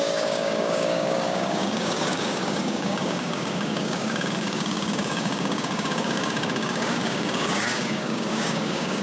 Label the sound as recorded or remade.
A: remade